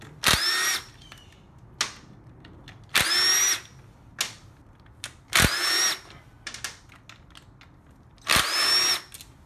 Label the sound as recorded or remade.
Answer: recorded